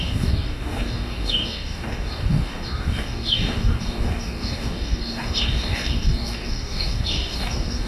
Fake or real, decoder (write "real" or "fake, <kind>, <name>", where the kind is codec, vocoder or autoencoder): fake, codec, DAC